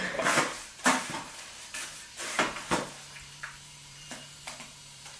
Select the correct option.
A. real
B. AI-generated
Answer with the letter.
B